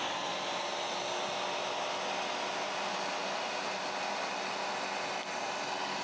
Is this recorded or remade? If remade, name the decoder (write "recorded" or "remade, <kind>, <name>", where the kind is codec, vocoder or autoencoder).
recorded